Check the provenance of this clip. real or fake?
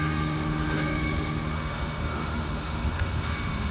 fake